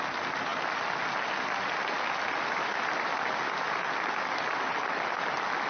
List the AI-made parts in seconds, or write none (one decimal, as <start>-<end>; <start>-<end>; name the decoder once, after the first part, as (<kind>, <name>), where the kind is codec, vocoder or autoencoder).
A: none